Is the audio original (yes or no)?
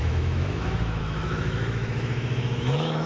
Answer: no